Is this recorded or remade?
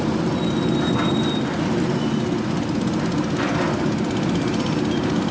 recorded